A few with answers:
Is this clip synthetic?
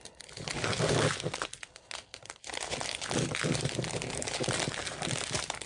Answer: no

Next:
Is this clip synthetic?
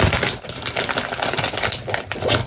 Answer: no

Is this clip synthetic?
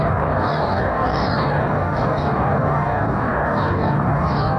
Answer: yes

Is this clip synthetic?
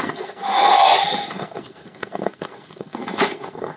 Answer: yes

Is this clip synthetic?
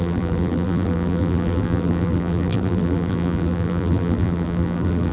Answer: yes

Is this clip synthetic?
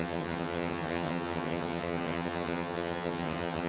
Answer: yes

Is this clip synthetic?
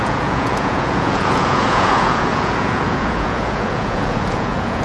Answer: yes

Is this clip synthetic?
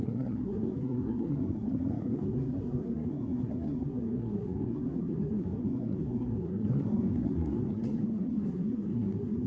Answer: yes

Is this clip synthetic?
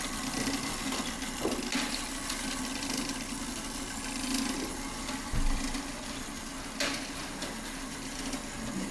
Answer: no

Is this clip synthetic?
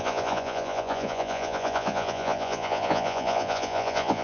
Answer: yes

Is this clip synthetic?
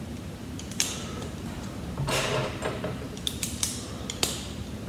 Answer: yes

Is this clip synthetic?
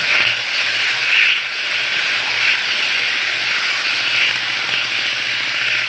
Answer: no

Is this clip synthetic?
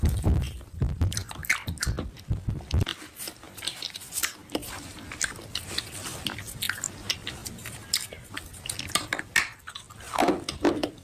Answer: no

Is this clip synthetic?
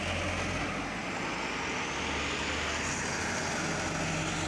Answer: no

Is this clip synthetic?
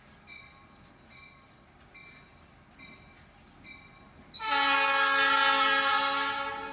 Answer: no